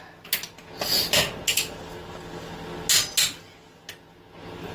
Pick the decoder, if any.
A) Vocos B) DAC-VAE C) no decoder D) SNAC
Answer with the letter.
C